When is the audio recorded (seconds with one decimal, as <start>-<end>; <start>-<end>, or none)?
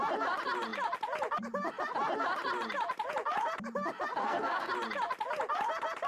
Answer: 0.0-4.2; 4.7-6.1